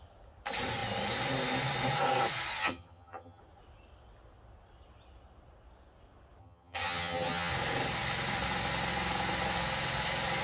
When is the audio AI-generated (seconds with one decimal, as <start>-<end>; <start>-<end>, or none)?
2.6-3.4; 6.4-7.5